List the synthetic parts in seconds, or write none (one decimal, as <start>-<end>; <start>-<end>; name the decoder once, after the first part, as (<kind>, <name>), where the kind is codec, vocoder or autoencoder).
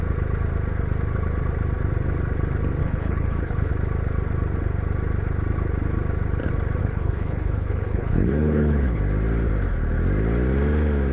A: 2.8-3.7 (codec, HILCodec); 6.8-9.0